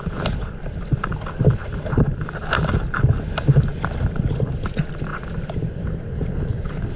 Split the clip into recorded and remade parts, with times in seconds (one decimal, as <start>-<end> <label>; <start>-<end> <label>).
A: 0.0-7.0 recorded